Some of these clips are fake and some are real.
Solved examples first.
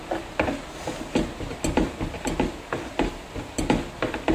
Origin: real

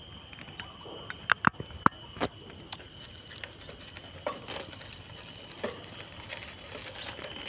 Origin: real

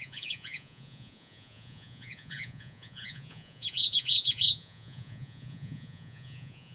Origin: fake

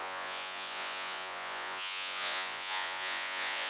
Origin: fake